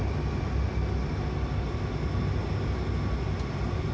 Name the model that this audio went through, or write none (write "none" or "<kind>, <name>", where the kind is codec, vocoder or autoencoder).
none